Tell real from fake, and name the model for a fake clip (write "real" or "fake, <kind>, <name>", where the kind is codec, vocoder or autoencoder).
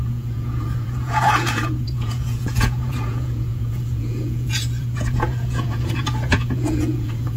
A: fake, vocoder, Vocos